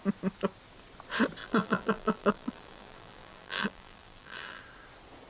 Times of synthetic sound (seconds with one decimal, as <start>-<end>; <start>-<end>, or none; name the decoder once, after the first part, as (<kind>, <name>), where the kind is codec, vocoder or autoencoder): 1.4-4.6 (vocoder, BigVGAN v2)